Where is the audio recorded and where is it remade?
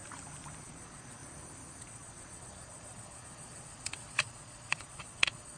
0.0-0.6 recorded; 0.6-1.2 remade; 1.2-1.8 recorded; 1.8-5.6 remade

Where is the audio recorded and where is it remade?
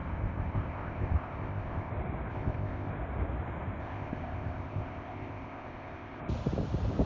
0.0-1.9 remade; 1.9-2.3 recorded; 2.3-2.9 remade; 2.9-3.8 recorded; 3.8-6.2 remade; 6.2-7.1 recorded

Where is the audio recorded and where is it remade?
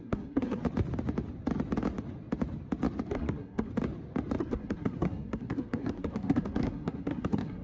0.0-0.6 remade; 0.6-3.1 recorded; 3.1-3.7 remade; 3.7-4.4 recorded; 4.4-7.6 remade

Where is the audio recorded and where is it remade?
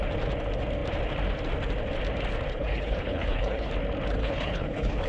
0.0-2.5 recorded; 2.5-3.7 remade; 3.7-4.2 recorded; 4.2-5.1 remade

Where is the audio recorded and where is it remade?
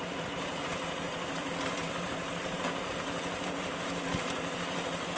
0.0-5.2 remade